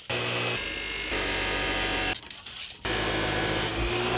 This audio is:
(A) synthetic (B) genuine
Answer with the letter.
B